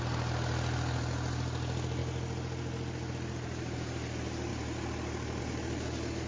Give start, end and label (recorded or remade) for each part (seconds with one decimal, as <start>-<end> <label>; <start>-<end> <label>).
0.0-6.3 recorded